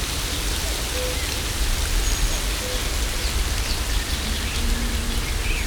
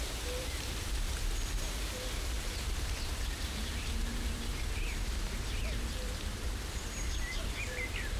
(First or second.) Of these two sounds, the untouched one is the first